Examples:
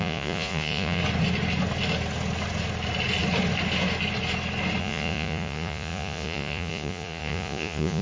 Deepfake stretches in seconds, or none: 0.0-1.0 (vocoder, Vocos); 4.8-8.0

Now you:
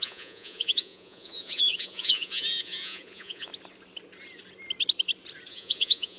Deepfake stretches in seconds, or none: 0.0-3.5 (vocoder, Vocos); 5.5-6.2